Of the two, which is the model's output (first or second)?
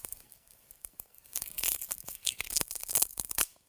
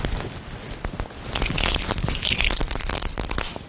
first